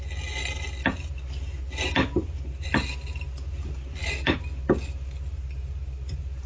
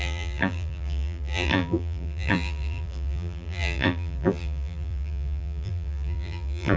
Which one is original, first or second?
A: first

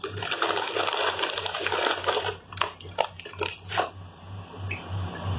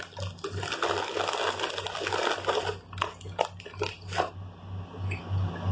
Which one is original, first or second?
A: second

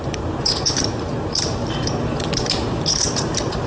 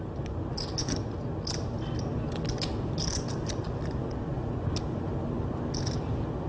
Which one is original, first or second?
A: second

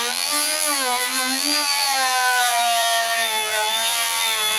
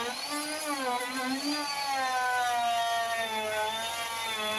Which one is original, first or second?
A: second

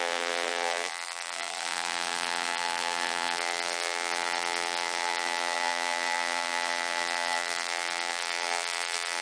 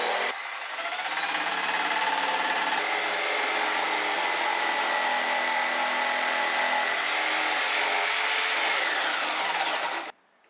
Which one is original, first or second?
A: second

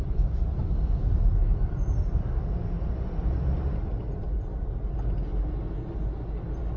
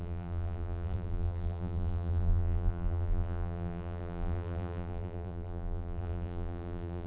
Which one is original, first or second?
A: first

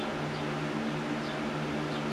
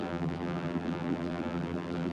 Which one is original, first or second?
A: first